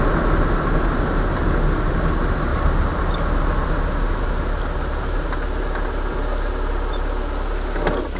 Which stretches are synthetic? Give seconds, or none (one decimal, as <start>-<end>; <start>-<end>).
none